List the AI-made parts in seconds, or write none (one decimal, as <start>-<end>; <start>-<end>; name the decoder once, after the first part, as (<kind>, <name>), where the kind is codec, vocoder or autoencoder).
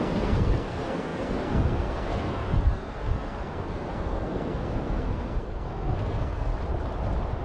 0.0-6.5 (codec, SNAC)